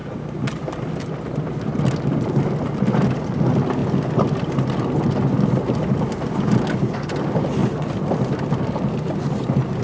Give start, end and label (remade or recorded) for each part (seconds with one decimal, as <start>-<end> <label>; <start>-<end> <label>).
0.0-9.8 recorded